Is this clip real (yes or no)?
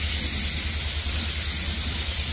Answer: yes